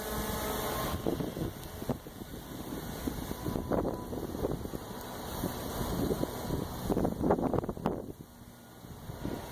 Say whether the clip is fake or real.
real